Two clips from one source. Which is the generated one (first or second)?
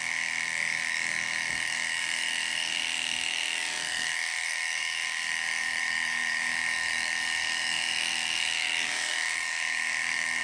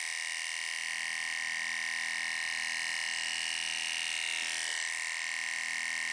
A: first